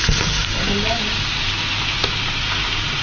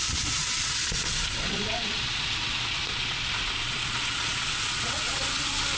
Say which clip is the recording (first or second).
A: first